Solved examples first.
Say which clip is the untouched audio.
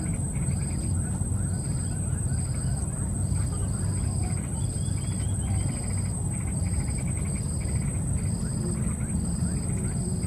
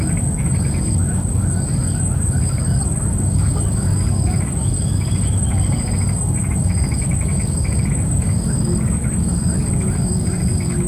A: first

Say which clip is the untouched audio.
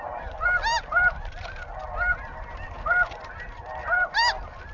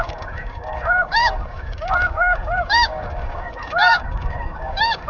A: first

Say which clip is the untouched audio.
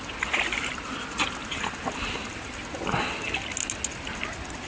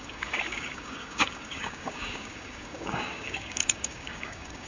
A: first